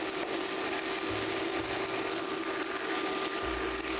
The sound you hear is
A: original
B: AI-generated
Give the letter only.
A